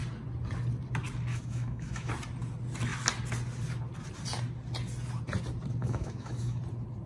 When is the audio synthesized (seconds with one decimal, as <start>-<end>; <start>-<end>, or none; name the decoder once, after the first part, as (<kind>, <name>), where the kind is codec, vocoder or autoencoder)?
1.3-2.1 (autoencoder, DAC-VAE); 5.8-6.6